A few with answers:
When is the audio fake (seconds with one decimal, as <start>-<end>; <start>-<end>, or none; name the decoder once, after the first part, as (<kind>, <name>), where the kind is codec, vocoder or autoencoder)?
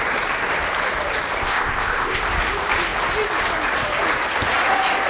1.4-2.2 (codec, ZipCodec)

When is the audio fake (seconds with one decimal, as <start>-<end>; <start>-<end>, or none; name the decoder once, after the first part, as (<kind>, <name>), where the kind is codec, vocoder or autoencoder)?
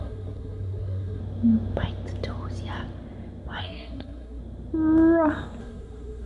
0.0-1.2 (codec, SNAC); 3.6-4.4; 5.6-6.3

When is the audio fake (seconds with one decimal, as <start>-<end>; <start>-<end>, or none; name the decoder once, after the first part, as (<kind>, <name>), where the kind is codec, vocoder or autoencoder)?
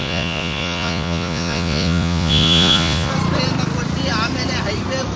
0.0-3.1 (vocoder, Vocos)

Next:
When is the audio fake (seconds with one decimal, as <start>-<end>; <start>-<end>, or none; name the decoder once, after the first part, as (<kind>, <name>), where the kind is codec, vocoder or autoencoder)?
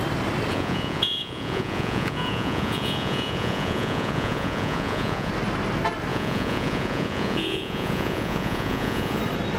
0.5-5.3 (vocoder, Vocos); 6.1-9.2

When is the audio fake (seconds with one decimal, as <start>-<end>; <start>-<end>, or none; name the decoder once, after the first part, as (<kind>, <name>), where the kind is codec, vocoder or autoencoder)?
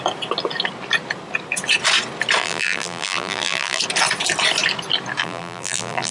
2.4-3.8 (vocoder, BigVGAN v2); 5.2-6.1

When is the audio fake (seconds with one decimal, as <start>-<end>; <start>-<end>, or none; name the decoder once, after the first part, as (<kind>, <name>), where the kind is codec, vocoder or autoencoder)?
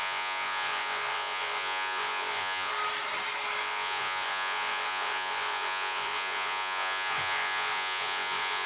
0.0-2.7 (vocoder, Vocos); 3.6-8.7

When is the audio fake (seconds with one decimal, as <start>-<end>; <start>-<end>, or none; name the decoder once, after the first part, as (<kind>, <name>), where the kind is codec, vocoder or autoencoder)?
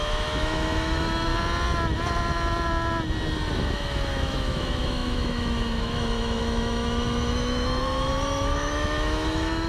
0.0-1.3 (autoencoder, DAC-VAE); 3.5-9.7